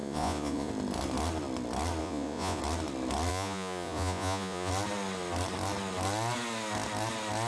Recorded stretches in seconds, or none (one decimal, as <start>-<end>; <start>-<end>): 0.7-2.0; 2.6-3.3; 4.7-7.5